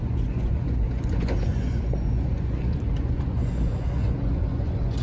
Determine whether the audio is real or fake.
fake